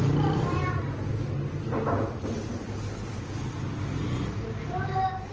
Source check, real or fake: real